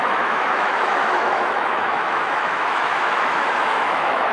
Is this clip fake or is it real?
fake